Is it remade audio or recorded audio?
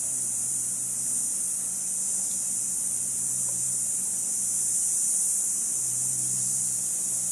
remade